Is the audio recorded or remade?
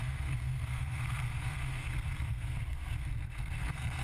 remade